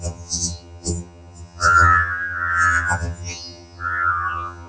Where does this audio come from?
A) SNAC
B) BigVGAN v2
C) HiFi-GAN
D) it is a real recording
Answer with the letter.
C